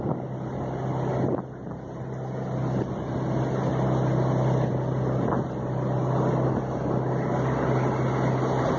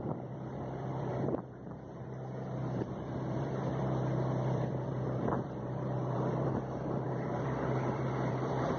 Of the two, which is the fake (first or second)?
second